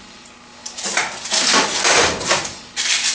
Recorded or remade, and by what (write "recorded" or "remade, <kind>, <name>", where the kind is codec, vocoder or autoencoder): recorded